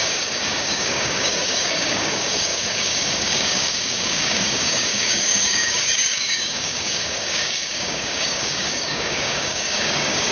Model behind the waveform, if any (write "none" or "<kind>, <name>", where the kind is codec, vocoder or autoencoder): codec, DAC